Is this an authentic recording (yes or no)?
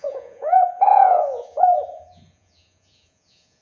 no